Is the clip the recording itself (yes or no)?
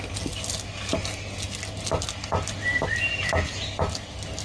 yes